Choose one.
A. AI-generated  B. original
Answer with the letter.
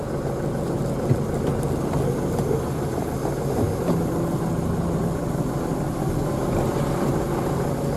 B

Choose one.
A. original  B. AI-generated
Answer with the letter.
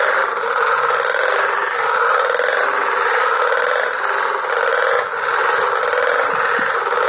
A